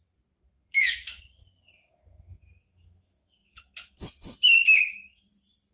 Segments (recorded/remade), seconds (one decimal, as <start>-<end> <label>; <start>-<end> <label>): 0.0-0.4 recorded; 0.4-1.2 remade; 1.2-1.9 recorded; 1.9-5.3 remade; 5.3-5.7 recorded